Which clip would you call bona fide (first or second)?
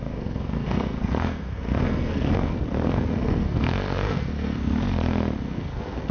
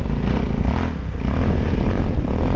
second